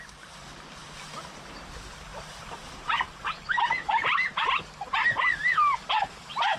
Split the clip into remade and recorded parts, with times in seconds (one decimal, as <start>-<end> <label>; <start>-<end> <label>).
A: 0.0-2.1 recorded; 2.1-4.6 remade; 4.6-5.4 recorded; 5.4-6.6 remade